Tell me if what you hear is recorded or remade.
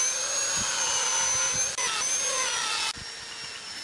recorded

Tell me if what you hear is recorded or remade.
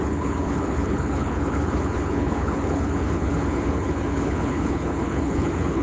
remade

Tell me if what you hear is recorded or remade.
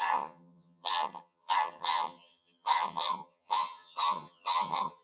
remade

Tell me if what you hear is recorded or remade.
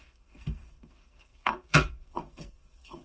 remade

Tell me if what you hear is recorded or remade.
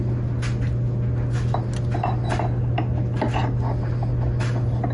recorded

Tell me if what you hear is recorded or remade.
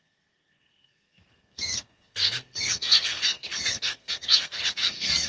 remade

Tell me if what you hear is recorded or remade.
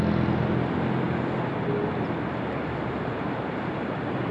recorded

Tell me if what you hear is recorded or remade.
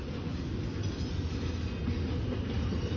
recorded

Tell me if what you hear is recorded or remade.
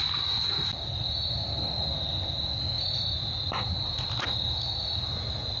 recorded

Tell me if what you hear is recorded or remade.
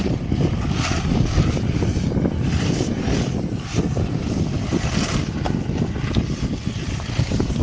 remade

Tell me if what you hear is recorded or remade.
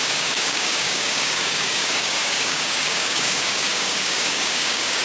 remade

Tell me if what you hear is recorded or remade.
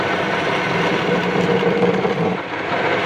remade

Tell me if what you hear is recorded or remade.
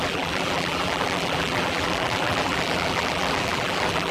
remade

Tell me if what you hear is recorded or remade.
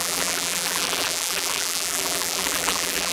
remade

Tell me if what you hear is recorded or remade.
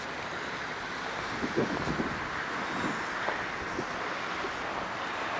recorded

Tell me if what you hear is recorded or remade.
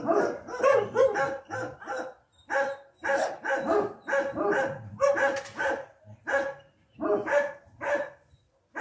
recorded